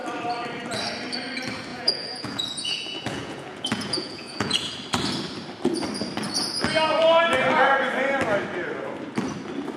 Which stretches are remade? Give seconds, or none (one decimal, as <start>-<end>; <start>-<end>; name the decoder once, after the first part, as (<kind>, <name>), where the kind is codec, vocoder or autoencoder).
1.7-4.7 (vocoder, Vocos)